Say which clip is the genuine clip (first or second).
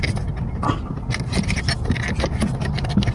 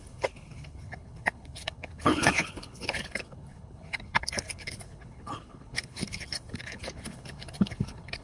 first